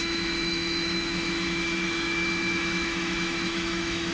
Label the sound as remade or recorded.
remade